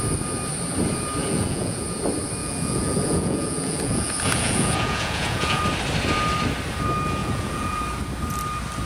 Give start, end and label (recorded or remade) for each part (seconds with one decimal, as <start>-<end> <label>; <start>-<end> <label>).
0.0-1.2 recorded; 1.2-1.8 remade; 1.8-2.4 recorded; 2.4-5.6 remade; 5.6-7.2 recorded; 7.2-7.8 remade; 7.8-8.9 recorded